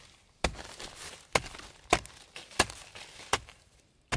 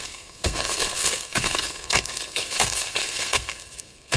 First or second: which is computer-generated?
second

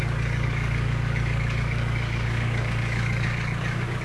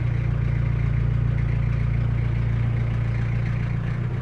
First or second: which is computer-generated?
first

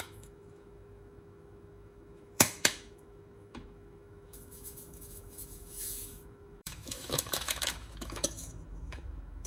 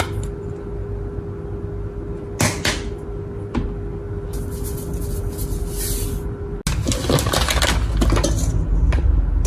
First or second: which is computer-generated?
first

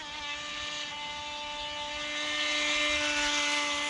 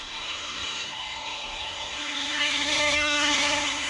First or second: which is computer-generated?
second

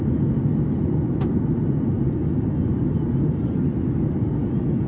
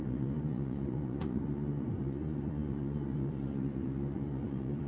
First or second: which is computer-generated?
second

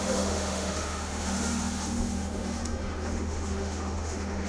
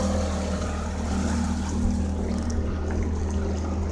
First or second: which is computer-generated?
first